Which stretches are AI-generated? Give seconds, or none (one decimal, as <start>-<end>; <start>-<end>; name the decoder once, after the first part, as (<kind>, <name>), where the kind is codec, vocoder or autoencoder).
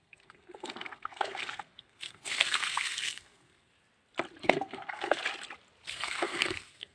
0.0-3.7 (codec, SNAC); 4.4-5.2; 5.9-6.9